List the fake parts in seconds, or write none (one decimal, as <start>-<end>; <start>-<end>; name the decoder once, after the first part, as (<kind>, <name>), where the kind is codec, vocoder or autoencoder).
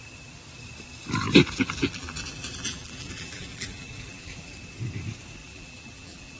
1.8-4.5 (vocoder, BigVGAN v2); 5.4-6.4